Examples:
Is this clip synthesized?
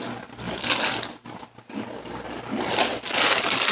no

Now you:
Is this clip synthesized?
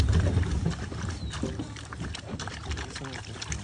no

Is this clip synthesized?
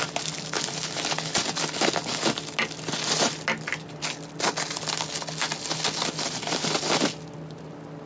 no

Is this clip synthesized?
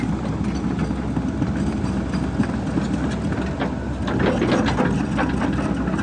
no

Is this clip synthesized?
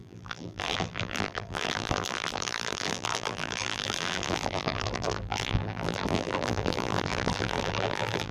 yes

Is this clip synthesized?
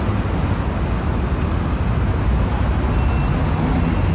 no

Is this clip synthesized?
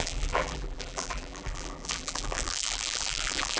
yes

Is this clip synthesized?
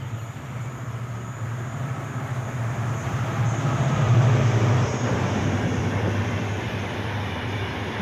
yes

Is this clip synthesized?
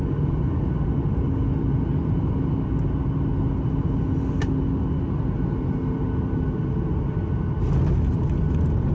no